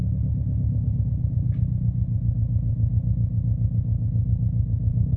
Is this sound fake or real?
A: real